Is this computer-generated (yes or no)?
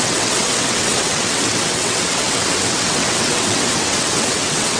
yes